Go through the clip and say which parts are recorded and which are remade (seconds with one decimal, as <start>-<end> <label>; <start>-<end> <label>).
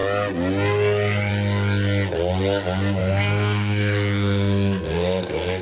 0.0-3.0 recorded; 3.0-5.6 remade